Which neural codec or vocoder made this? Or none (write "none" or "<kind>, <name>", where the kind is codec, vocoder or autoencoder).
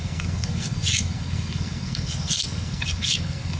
codec, SNAC